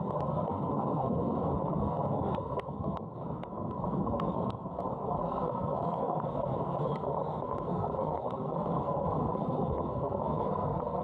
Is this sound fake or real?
fake